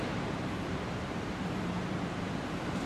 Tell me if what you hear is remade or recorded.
remade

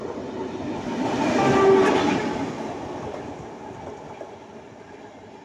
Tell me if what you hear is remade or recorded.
recorded